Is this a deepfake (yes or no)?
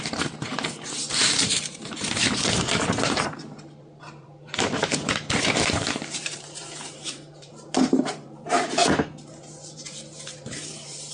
yes